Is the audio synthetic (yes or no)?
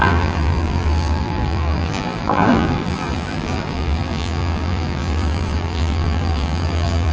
yes